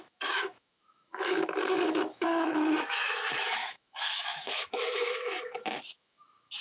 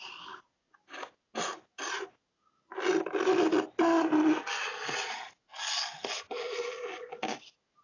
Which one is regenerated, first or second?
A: first